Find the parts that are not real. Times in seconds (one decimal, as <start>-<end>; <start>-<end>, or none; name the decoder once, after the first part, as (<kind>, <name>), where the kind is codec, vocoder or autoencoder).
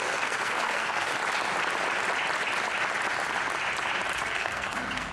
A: 0.0-1.1 (codec, SNAC); 4.2-5.1